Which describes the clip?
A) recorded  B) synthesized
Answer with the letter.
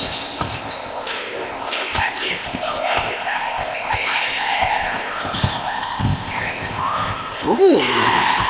B